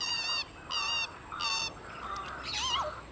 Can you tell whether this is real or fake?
real